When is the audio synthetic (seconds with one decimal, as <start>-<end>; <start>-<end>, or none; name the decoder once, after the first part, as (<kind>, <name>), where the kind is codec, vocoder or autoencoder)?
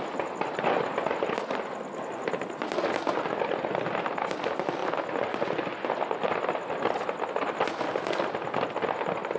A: none